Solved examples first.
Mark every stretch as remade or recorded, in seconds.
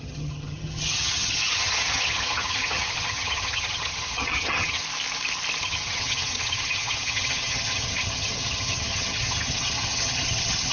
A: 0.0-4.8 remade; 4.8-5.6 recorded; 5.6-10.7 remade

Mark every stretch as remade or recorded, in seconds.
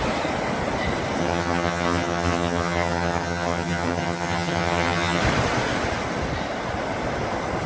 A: 0.0-1.2 recorded; 1.2-5.2 remade; 5.2-7.7 recorded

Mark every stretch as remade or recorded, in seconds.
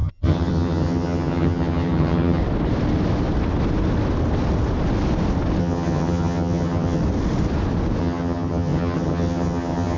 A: 0.0-2.4 remade; 2.4-5.6 recorded; 5.6-7.0 remade; 7.0-8.0 recorded; 8.0-10.0 remade